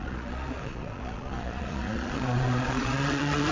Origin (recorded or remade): remade